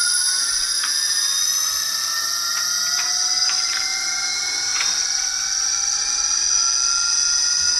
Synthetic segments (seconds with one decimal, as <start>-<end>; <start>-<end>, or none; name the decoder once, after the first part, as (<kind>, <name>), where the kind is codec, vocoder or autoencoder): none

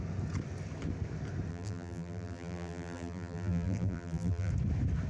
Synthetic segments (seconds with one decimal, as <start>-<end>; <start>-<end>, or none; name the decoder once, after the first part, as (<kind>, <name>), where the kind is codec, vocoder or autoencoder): 1.5-4.5 (vocoder, BigVGAN v2)

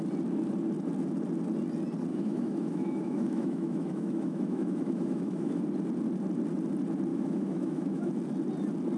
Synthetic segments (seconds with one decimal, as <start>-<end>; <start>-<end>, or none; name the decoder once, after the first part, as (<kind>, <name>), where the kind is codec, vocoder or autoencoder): 2.1-5.6 (autoencoder, DAC-VAE); 7.1-8.1

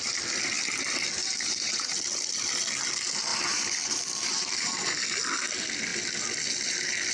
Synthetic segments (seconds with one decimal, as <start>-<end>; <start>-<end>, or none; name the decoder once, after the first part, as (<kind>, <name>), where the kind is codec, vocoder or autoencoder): 1.2-2.0 (vocoder, BigVGAN v2); 3.3-4.9

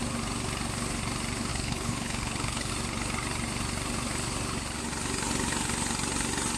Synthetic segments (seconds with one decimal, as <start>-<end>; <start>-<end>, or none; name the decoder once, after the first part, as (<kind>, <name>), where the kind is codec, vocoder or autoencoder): 1.5-2.7 (codec, HILCodec)

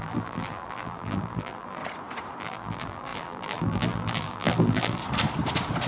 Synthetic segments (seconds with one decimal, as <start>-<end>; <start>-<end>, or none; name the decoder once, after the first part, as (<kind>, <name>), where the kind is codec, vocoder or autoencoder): 0.0-1.8 (vocoder, BigVGAN v2); 2.4-5.0

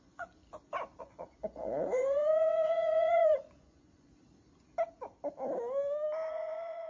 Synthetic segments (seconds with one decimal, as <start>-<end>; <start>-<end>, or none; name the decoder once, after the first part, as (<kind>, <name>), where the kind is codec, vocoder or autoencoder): 0.0-0.4 (vocoder, Vocos); 1.0-4.1; 6.3-6.9